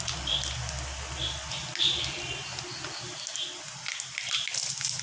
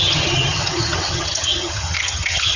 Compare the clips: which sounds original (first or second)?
first